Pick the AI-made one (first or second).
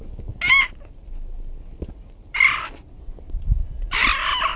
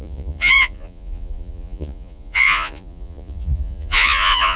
second